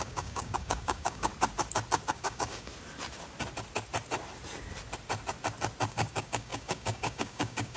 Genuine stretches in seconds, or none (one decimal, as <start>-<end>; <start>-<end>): 1.3-2.1; 2.7-5.9